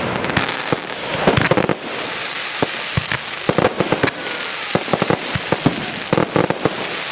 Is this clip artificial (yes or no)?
no